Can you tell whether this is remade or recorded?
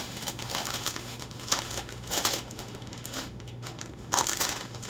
remade